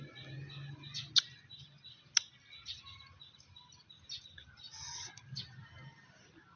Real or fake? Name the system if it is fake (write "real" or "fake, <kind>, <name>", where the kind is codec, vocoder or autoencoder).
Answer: real